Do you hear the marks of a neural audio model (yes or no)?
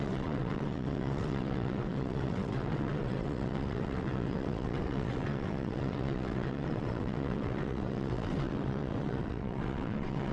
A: yes